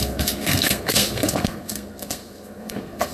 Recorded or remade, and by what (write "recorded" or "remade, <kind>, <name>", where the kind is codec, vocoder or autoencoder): remade, codec, SNAC